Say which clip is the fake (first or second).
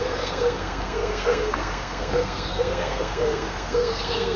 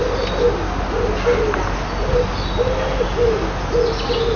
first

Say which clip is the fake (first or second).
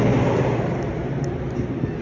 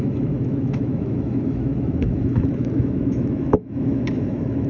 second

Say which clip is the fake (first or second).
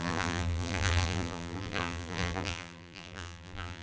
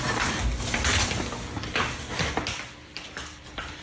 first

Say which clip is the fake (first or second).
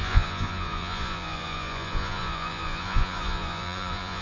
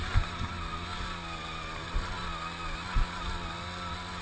first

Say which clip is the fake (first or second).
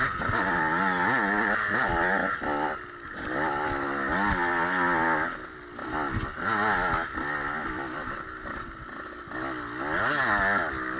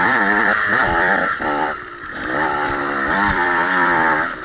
second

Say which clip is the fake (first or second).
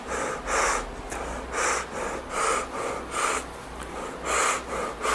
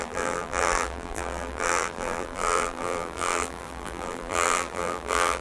second